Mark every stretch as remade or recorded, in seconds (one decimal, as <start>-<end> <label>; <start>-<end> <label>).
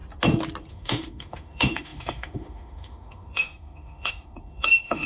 0.0-0.7 recorded; 0.7-5.1 remade